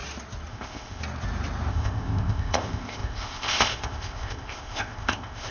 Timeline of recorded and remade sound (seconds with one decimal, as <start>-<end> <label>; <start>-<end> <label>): 0.0-0.5 recorded; 0.5-1.0 remade; 1.0-1.7 recorded; 1.7-5.5 remade